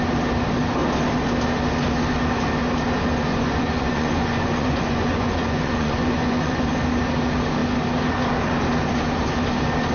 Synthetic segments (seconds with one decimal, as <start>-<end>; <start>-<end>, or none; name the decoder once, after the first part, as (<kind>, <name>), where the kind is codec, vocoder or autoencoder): 3.3-6.6 (vocoder, Vocos)